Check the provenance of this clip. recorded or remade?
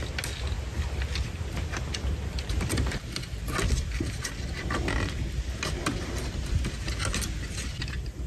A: recorded